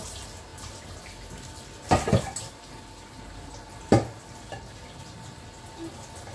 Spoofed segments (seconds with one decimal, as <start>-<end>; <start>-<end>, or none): none